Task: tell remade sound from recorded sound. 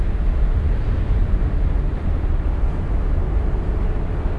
recorded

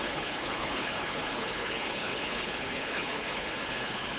remade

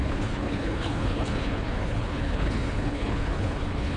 remade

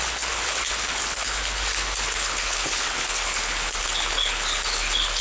remade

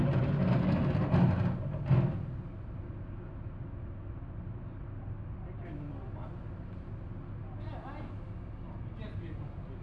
recorded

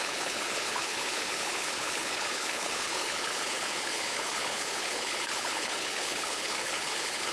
remade